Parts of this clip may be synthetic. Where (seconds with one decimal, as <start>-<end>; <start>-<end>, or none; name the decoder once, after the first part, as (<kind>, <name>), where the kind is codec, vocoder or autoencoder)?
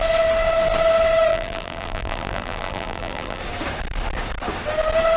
1.3-3.4 (vocoder, BigVGAN v2)